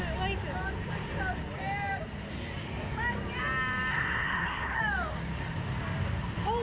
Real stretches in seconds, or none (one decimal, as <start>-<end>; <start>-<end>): 0.0-3.9; 4.8-6.6